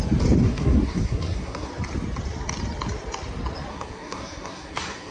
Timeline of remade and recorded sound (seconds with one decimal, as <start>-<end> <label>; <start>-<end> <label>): 0.0-0.4 recorded; 0.4-1.7 remade; 1.7-3.7 recorded; 3.7-5.1 remade